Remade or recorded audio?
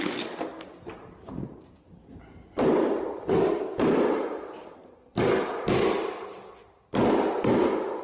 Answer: recorded